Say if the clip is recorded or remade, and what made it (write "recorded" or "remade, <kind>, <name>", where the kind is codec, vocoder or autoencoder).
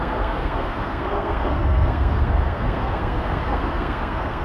remade, codec, SNAC